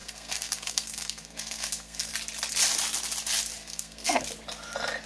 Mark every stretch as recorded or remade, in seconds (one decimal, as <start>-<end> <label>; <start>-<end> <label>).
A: 0.0-2.1 remade; 2.1-3.6 recorded; 3.6-4.2 remade; 4.2-5.1 recorded